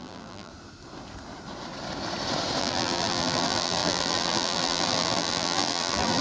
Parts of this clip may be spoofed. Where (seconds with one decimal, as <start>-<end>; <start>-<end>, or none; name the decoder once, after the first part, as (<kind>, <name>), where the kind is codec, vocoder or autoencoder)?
0.0-0.5 (vocoder, BigVGAN v2); 2.6-6.2